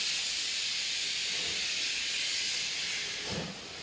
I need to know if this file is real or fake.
real